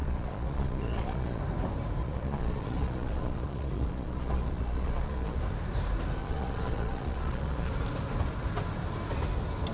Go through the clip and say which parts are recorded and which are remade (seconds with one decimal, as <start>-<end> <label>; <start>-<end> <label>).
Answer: 0.0-1.4 remade; 1.4-2.0 recorded; 2.0-5.4 remade; 5.4-6.2 recorded; 6.2-7.7 remade; 7.7-9.7 recorded